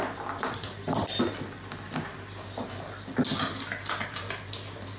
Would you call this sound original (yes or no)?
yes